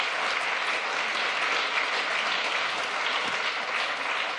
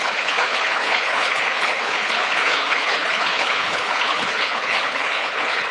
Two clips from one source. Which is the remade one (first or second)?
second